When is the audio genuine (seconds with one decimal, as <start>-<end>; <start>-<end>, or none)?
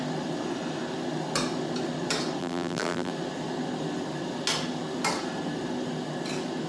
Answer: 0.0-2.4; 3.1-6.7